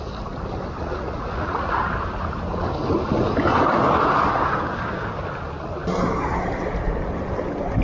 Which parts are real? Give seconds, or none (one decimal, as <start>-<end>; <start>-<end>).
0.0-0.8; 1.8-7.8